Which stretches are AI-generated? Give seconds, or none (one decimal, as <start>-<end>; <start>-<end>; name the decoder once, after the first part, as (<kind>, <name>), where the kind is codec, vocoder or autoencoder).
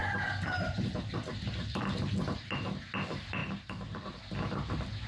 0.0-1.9 (vocoder, BigVGAN v2)